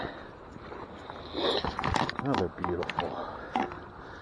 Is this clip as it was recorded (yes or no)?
yes